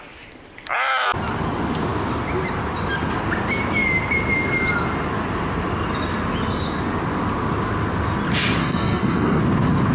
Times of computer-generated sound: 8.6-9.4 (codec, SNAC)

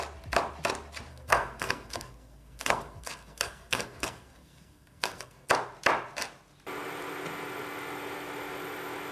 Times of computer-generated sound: 1.1-5.5 (codec, SNAC)

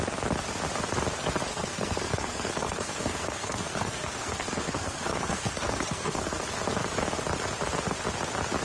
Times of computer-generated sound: 1.5-6.4 (codec, SNAC)

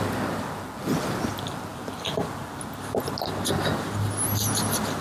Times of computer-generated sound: none

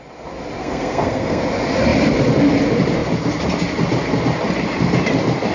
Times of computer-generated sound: 0.6-1.4 (codec, SNAC)